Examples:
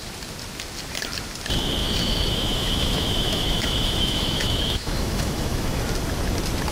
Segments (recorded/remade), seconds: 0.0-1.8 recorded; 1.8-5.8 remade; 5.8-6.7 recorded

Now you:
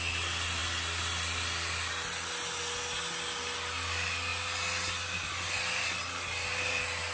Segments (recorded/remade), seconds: 0.0-7.1 recorded

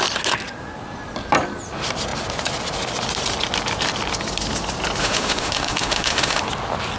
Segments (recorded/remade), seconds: 0.0-5.0 recorded; 5.0-6.4 remade; 6.4-7.0 recorded

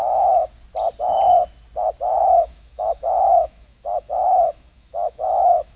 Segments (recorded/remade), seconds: 0.0-0.5 remade; 0.5-2.2 recorded; 2.2-5.8 remade

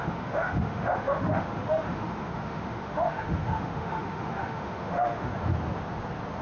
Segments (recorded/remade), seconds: 0.0-5.5 remade; 5.5-6.4 recorded

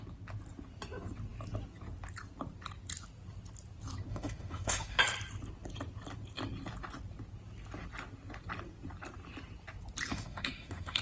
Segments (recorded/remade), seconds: 0.0-4.1 recorded; 4.1-5.0 remade; 5.0-10.1 recorded; 10.1-11.0 remade